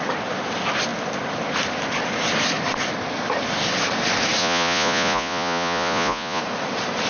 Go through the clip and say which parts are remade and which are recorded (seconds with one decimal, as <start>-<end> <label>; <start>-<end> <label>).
0.0-4.4 recorded; 4.4-6.4 remade; 6.4-7.1 recorded